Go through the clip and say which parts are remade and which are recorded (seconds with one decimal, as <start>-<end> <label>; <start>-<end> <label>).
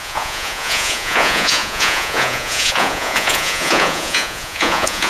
0.0-5.1 remade